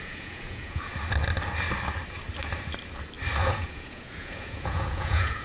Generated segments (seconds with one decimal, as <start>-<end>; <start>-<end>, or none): 0.0-0.9; 3.4-5.4

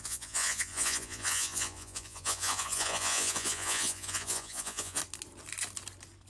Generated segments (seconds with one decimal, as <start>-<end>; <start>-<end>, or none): 0.0-5.0